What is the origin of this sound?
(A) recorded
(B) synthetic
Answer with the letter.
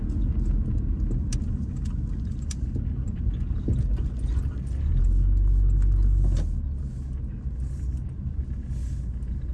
A